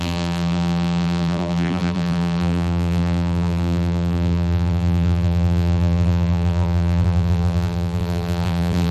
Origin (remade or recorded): remade